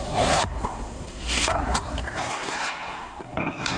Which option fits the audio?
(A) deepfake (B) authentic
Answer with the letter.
A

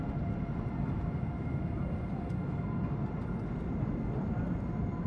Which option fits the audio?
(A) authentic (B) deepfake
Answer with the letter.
A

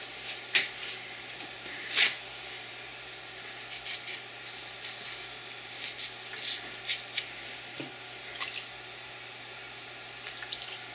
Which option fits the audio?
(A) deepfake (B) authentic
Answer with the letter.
B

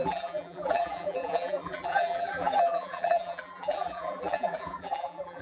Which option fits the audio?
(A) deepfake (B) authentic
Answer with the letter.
A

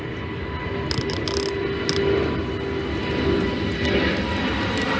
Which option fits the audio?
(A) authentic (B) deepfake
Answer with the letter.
A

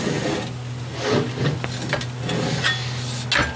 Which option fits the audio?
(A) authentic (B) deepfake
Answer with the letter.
A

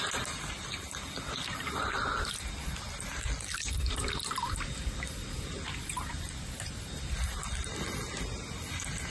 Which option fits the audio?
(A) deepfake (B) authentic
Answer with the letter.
B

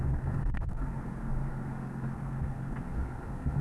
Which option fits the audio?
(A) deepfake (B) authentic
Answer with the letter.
A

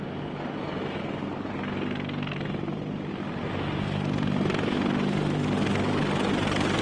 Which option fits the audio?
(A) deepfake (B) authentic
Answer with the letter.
B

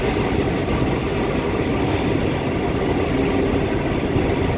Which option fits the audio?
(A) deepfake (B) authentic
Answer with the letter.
B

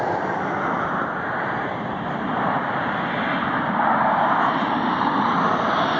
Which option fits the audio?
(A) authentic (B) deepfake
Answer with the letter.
A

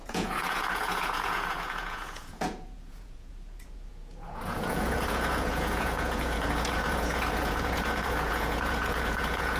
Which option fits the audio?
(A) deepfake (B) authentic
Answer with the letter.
A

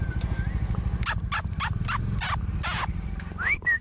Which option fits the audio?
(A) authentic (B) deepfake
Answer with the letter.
A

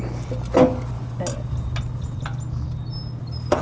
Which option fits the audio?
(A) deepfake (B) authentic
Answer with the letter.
B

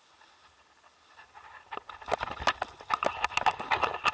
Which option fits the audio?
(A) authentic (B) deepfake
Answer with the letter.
A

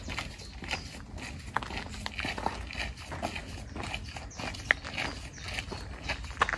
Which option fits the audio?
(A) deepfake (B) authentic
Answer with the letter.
B